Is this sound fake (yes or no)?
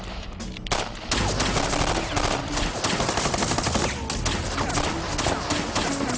no